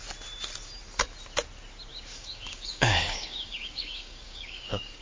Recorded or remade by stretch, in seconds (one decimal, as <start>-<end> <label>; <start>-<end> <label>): 0.0-1.9 recorded; 1.9-5.0 remade